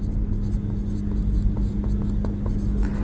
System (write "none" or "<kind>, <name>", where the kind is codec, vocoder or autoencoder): none